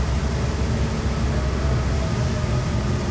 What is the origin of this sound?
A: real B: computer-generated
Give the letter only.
A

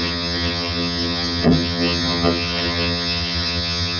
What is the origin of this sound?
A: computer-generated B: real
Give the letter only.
A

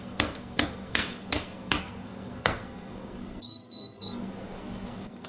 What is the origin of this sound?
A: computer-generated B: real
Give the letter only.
A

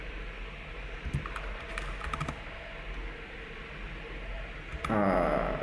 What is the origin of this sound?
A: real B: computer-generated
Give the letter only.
A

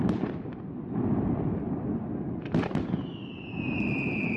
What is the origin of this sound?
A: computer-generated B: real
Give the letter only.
B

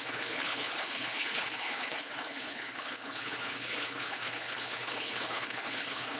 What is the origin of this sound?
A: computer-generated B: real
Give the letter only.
A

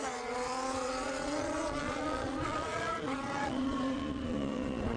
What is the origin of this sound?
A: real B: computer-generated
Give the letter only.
B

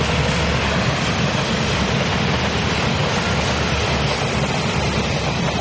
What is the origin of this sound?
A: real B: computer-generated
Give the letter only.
A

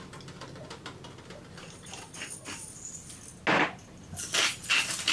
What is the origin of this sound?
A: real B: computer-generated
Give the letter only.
A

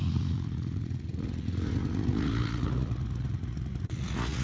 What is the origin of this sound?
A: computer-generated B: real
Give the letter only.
A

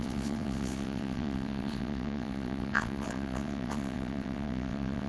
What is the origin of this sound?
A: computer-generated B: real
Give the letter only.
A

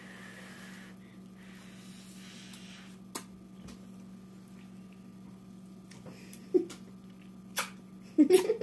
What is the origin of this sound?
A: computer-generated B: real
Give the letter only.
B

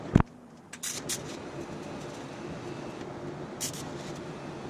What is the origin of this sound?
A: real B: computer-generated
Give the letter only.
A